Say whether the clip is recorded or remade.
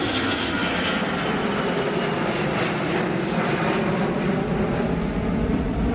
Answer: recorded